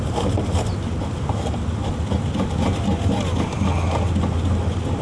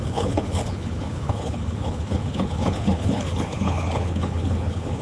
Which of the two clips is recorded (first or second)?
first